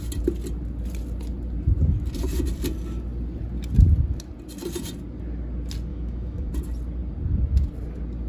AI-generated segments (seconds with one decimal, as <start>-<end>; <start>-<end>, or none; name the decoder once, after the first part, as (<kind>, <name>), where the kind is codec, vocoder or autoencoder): 5.9-6.5 (autoencoder, DAC-VAE)